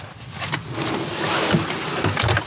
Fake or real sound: fake